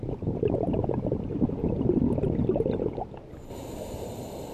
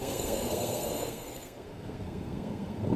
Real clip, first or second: first